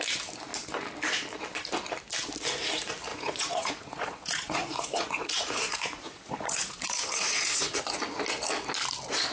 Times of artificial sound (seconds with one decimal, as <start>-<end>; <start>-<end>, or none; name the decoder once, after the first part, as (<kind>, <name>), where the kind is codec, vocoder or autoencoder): 3.1-7.8 (vocoder, Vocos)